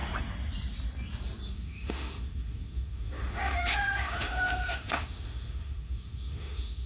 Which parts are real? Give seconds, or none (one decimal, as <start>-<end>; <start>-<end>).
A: 0.0-1.5